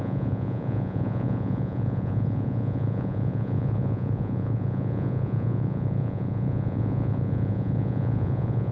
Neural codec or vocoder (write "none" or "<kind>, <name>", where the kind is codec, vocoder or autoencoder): vocoder, Vocos